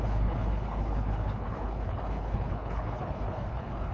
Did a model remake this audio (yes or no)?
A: yes